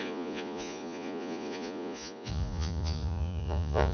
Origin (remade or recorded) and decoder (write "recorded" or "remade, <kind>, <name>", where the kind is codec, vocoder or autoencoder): remade, vocoder, Vocos